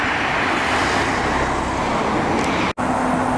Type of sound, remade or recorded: recorded